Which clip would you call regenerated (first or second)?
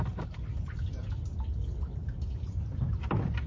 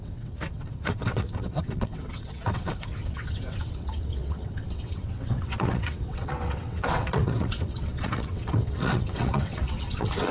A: second